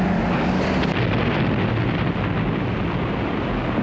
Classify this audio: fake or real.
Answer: real